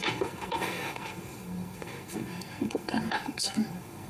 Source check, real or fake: fake